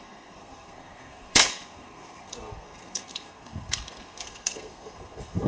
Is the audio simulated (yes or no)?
yes